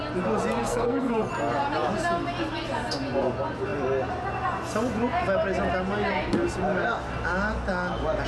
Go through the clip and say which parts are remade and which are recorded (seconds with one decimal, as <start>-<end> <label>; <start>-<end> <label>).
0.0-0.6 recorded; 0.6-1.3 remade; 1.3-8.3 recorded